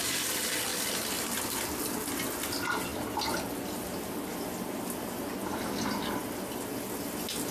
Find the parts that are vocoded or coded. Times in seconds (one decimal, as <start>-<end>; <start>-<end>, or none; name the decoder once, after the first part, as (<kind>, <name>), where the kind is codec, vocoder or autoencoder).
none